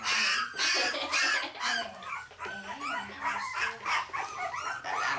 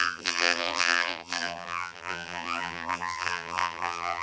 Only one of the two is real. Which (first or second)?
first